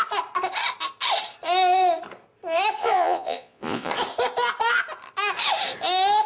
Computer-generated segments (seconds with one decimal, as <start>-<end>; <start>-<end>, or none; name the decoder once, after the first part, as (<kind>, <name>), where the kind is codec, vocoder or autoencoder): 2.8-3.9 (vocoder, Vocos)